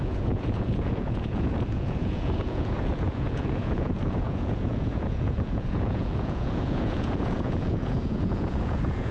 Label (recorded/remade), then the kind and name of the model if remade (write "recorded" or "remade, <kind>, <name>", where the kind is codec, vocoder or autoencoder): remade, vocoder, Vocos